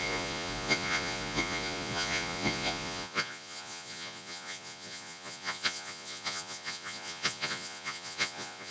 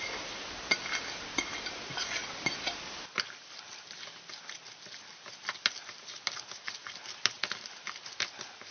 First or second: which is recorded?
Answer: second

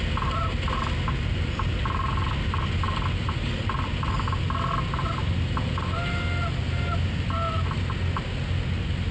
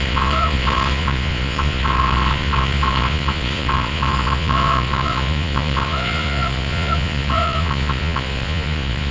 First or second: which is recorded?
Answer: first